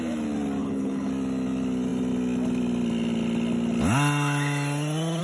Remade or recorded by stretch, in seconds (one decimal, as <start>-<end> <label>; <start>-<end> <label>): 0.0-0.6 recorded; 0.6-1.1 remade; 1.1-5.2 recorded